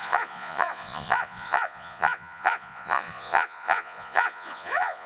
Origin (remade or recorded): remade